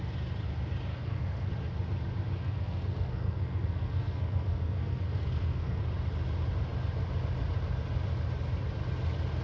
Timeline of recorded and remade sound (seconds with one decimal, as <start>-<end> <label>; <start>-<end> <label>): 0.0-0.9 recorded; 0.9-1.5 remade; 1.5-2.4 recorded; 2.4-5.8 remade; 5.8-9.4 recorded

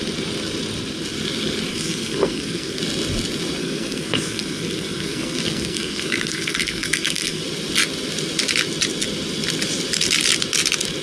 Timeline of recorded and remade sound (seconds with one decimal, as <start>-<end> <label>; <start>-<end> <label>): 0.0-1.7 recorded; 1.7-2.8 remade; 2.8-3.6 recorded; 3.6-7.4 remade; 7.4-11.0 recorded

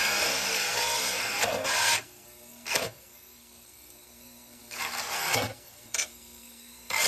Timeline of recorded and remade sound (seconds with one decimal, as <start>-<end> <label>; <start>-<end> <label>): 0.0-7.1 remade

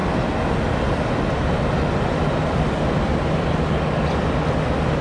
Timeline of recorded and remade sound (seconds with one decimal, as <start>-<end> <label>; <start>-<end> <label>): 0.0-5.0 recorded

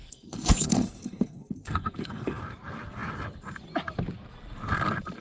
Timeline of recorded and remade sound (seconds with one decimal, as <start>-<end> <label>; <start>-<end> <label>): 0.0-2.4 remade; 2.4-5.2 recorded

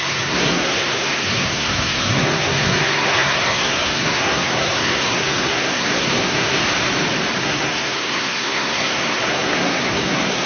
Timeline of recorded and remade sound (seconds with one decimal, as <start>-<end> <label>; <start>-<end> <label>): 0.0-6.6 remade; 6.6-7.4 recorded; 7.4-10.5 remade